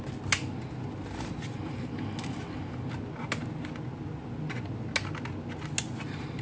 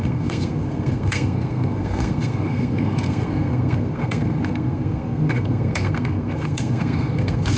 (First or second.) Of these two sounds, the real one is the first